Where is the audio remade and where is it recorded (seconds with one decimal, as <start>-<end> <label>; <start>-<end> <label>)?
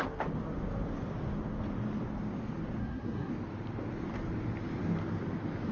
0.0-2.8 recorded; 2.8-3.3 remade; 3.3-5.7 recorded